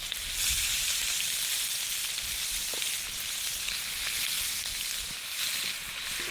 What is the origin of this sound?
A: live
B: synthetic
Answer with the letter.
A